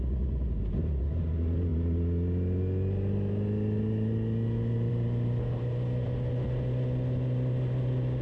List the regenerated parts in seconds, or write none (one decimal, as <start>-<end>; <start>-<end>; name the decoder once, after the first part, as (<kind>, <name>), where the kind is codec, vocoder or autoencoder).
none